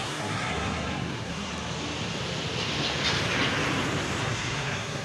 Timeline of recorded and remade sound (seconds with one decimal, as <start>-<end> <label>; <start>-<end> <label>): 0.0-1.5 remade; 1.5-4.2 recorded; 4.2-5.0 remade